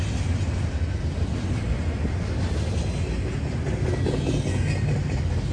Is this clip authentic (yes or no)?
yes